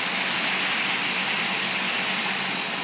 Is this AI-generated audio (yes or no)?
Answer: no